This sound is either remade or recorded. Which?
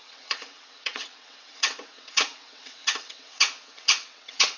remade